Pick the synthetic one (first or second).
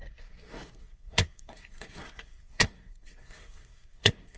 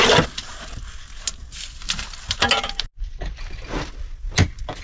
first